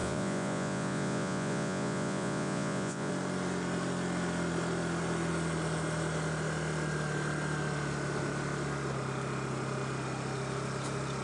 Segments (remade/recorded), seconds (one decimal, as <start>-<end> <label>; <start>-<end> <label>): 0.0-3.1 remade; 3.1-11.2 recorded